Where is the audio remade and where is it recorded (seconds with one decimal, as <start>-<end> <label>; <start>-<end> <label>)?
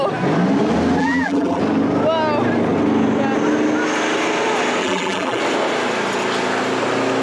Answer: 0.0-1.0 recorded; 1.0-1.6 remade; 1.6-4.8 recorded; 4.8-5.4 remade; 5.4-7.2 recorded